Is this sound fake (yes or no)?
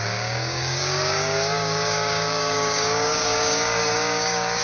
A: yes